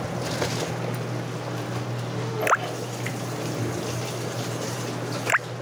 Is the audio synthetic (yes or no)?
no